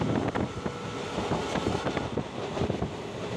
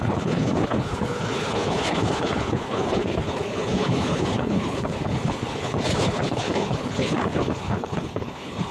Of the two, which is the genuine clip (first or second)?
first